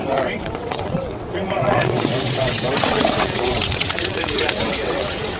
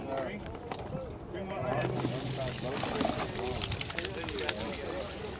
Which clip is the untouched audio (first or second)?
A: second